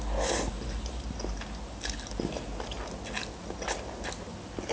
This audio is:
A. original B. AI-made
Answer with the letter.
A